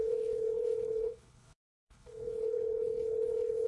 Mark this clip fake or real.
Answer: fake